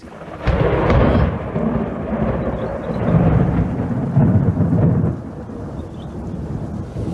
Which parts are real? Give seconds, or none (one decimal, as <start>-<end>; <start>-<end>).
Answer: 0.0-2.7; 6.6-7.1